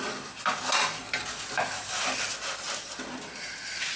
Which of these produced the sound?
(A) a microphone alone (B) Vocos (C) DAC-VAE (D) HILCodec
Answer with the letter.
A